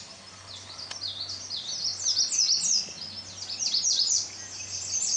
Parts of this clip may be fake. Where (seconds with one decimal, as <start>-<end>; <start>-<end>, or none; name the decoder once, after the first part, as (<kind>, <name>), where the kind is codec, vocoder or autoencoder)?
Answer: none